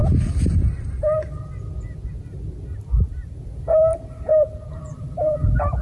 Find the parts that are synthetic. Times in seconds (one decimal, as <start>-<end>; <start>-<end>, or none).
3.5-3.9; 4.7-5.8